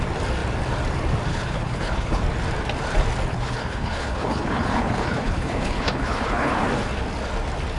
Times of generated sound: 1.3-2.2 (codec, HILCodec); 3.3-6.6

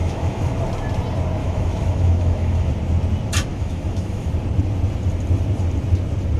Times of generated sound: 0.0-0.6 (autoencoder, DAC-VAE); 1.4-2.7; 3.5-4.3